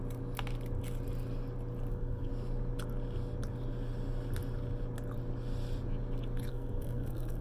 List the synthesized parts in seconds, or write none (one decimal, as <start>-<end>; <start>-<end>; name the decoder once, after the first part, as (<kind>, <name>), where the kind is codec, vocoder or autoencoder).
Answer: 1.9-2.3 (codec, SNAC); 6.5-7.4